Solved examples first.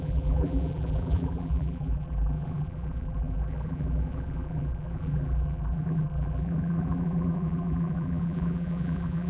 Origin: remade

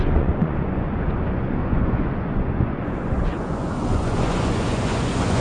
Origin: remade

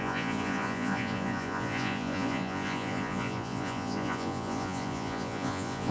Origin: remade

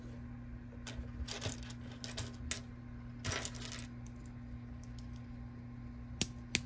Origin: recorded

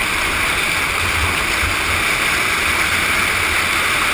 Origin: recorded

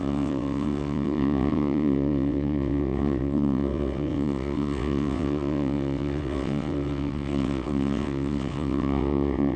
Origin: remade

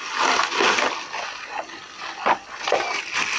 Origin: recorded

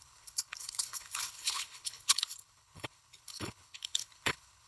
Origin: remade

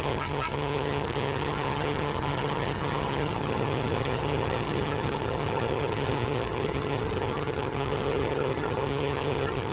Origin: remade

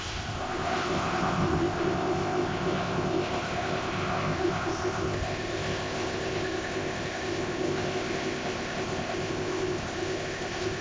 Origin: remade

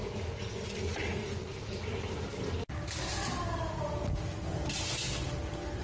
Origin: recorded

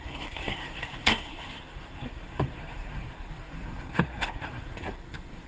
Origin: remade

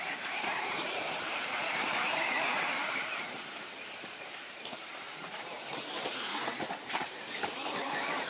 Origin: remade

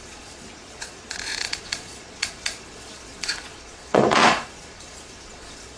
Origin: remade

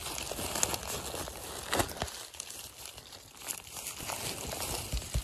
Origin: recorded